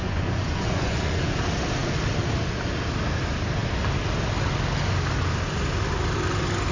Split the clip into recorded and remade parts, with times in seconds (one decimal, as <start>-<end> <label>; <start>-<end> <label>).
0.0-1.4 remade; 1.4-6.7 recorded